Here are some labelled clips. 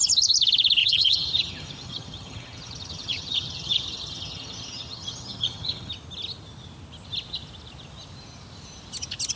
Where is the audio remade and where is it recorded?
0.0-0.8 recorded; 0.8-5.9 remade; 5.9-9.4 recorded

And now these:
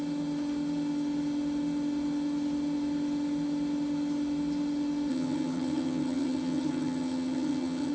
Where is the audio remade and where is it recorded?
0.0-5.1 recorded; 5.1-7.9 remade

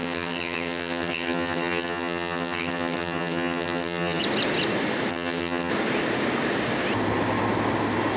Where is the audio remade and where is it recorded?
0.0-4.2 remade; 4.2-5.1 recorded; 5.1-5.7 remade; 5.7-8.2 recorded